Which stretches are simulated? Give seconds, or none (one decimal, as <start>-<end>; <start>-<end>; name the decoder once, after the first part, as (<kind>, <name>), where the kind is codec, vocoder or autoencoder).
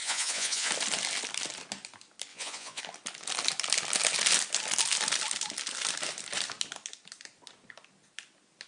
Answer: 0.0-0.7 (vocoder, Vocos); 2.3-2.8